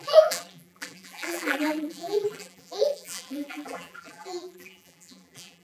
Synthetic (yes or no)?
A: yes